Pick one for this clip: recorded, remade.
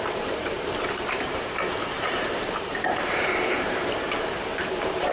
remade